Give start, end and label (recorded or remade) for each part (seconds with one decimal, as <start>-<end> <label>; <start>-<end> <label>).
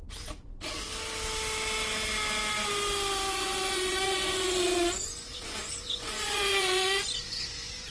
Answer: 0.0-3.3 recorded; 3.3-7.9 remade